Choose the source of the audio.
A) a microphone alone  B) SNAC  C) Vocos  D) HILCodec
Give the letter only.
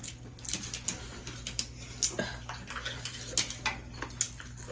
A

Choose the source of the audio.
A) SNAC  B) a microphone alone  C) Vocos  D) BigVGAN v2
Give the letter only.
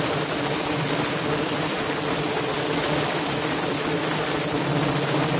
D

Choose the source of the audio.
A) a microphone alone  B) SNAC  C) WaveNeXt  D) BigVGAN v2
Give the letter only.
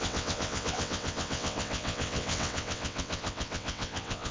C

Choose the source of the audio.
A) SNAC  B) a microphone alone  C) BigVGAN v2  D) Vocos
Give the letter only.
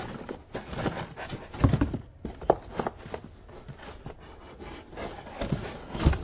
B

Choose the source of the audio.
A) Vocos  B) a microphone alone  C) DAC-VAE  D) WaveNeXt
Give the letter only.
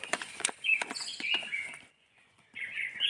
A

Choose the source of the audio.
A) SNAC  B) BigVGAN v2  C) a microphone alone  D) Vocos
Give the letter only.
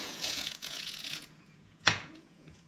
D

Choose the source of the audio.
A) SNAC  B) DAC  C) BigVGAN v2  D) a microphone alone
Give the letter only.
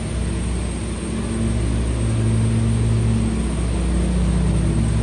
D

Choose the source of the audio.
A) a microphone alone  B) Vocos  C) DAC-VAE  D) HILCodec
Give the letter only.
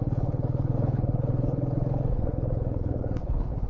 D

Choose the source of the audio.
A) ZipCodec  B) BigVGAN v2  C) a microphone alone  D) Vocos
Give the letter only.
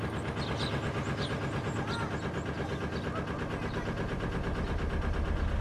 C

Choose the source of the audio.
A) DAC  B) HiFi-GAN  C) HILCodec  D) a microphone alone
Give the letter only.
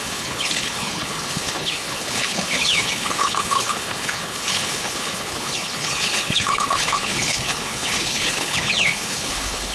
C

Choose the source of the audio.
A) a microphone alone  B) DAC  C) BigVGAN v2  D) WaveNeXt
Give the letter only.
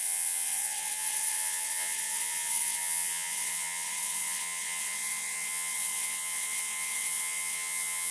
D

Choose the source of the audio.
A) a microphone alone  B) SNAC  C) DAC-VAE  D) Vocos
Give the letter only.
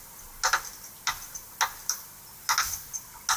A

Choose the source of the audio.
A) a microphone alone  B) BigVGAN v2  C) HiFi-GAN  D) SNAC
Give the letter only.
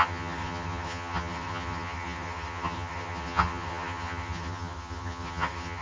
C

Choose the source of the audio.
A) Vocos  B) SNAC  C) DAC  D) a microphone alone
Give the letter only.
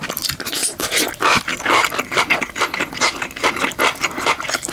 D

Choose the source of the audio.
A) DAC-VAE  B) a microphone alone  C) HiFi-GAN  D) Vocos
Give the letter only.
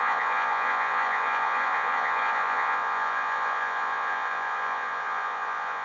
D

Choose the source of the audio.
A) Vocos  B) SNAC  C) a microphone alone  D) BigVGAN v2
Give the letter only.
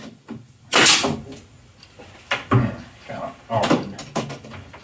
C